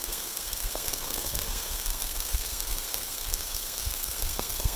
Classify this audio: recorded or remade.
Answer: remade